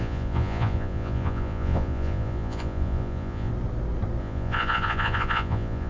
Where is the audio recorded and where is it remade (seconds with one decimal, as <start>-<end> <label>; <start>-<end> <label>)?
0.0-3.5 remade; 3.5-4.2 recorded; 4.2-5.9 remade